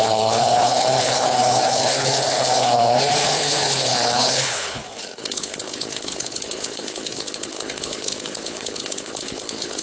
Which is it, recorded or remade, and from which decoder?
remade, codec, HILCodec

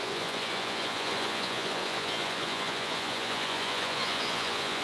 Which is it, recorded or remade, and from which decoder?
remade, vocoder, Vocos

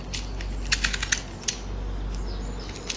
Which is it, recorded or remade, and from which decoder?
recorded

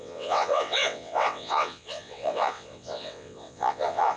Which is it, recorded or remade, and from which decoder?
remade, vocoder, WaveNeXt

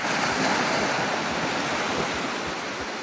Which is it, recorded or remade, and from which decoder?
recorded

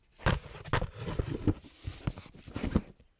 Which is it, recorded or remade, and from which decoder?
recorded